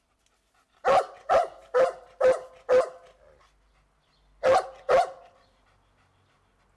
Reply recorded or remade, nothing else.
recorded